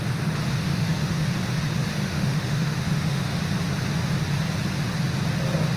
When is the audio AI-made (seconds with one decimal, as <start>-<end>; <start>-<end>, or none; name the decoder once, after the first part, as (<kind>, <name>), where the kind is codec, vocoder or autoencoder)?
0.7-1.3 (autoencoder, DAC-VAE); 2.0-3.4